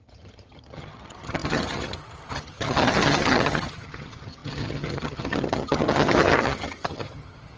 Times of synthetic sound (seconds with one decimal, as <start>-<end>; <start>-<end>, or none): 0.0-7.6